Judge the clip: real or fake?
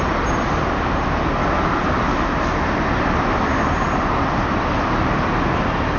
real